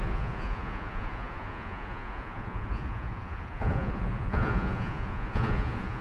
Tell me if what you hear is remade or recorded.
remade